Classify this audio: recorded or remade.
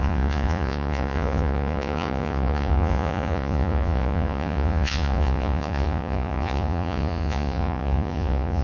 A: remade